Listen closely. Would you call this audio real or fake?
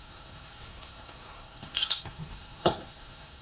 fake